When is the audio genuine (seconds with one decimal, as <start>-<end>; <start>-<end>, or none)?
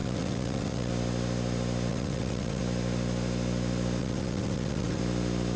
0.9-1.9; 2.6-4.0; 5.0-5.6